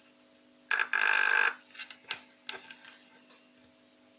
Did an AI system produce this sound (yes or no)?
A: no